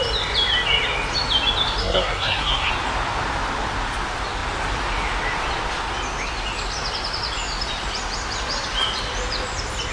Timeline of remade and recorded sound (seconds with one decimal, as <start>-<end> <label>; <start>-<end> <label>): 0.0-1.8 recorded; 1.8-2.7 remade; 2.7-9.9 recorded